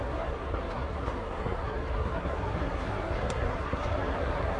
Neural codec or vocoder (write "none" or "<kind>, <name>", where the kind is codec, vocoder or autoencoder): codec, SNAC